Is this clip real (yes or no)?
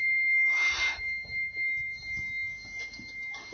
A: yes